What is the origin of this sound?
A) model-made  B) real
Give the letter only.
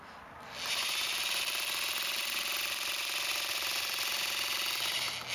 B